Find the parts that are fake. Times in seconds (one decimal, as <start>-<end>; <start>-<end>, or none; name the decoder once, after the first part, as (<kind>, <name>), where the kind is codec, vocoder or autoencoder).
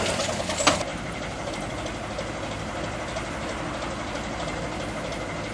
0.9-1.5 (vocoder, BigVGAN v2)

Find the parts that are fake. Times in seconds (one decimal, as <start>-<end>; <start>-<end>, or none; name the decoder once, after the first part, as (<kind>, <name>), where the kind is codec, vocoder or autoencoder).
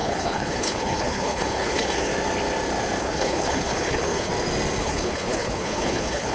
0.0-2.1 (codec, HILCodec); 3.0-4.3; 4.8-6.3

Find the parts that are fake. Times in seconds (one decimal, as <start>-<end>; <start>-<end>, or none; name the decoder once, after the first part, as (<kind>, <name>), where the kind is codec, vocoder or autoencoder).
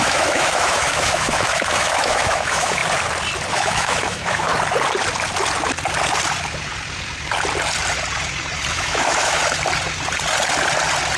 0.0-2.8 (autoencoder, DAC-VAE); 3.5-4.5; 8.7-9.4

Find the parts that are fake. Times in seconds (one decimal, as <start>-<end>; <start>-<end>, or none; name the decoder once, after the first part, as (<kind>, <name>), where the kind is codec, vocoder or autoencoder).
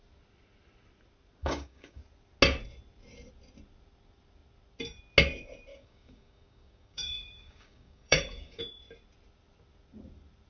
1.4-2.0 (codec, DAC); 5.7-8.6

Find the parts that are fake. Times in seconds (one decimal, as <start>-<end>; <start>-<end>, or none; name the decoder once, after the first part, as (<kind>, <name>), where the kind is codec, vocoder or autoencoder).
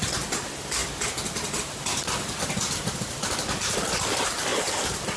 none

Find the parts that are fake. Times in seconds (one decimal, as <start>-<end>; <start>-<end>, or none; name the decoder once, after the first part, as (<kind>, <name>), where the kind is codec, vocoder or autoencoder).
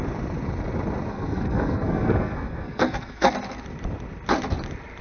1.1-3.3 (codec, SNAC)